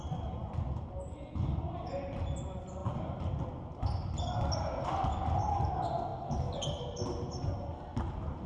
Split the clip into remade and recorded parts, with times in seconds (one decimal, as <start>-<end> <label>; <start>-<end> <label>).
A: 0.0-8.5 recorded